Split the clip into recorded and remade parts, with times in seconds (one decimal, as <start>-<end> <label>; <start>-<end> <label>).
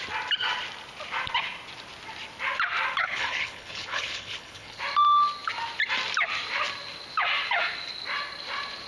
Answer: 0.0-3.0 recorded; 3.0-4.8 remade; 4.8-8.9 recorded